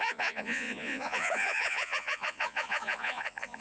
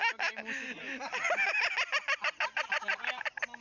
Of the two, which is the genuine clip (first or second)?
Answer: second